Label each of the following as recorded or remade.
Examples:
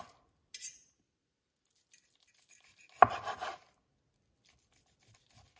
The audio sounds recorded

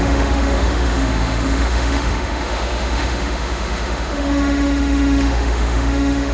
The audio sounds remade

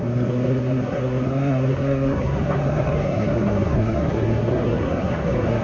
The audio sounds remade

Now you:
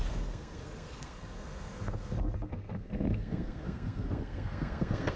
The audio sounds remade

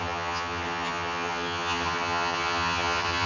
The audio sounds remade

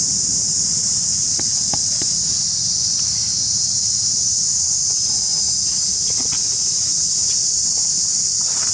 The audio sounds recorded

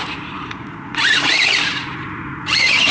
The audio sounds remade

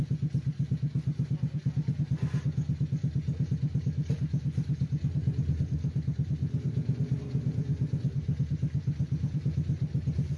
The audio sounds recorded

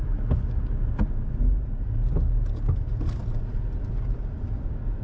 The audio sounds recorded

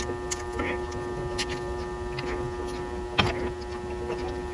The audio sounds recorded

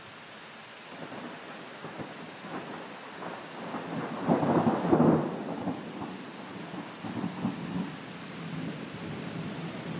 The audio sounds recorded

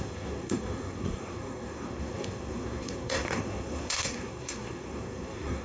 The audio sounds remade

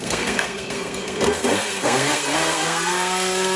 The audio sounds remade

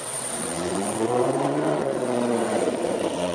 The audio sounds remade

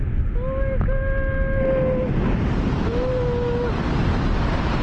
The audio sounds recorded